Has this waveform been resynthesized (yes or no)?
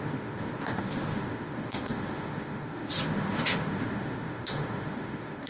yes